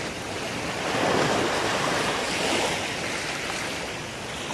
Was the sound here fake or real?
fake